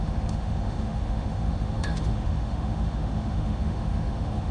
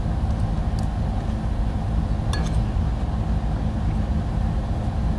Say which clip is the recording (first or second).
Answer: second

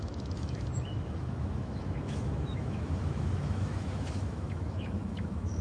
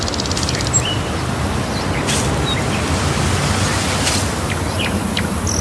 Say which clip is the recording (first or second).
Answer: second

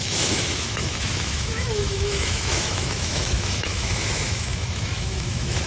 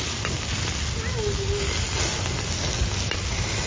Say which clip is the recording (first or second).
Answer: second